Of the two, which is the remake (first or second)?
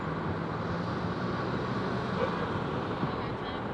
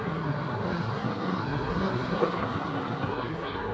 second